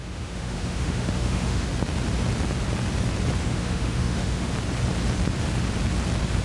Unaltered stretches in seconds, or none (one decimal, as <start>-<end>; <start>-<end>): 1.7-3.4; 4.5-6.4